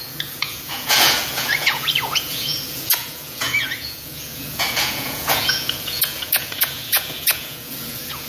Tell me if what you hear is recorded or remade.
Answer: remade